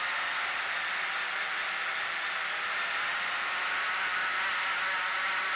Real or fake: real